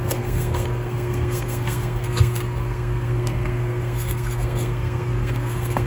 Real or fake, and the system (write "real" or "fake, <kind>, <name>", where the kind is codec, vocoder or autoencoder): fake, codec, SNAC